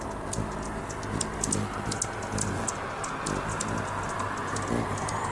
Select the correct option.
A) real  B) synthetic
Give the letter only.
A